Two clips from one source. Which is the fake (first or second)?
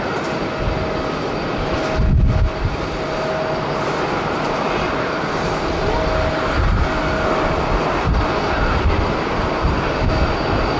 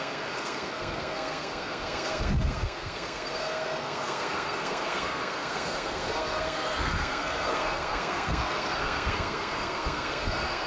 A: second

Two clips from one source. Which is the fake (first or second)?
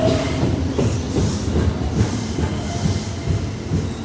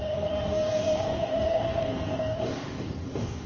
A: second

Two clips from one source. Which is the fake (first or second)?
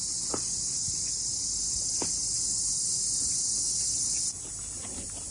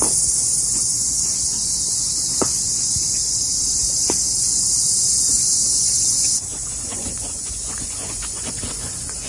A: second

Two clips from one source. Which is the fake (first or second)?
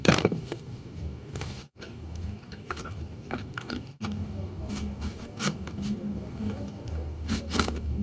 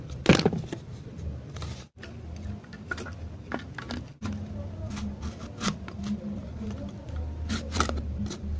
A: first